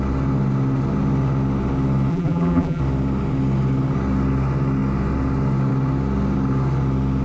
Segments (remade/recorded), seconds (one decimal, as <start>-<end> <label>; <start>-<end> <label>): 0.0-2.1 recorded; 2.1-2.8 remade; 2.8-7.2 recorded

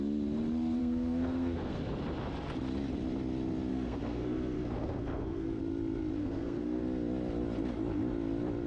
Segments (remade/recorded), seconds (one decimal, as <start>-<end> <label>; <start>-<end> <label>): 0.0-0.8 recorded; 0.8-1.8 remade; 1.8-3.7 recorded; 3.7-5.6 remade; 5.6-6.2 recorded; 6.2-6.8 remade; 6.8-8.7 recorded